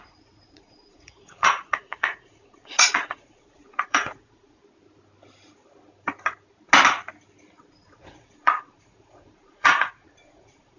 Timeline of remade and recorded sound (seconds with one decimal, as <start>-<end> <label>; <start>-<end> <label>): 0.0-4.6 remade; 4.6-7.7 recorded; 7.7-10.8 remade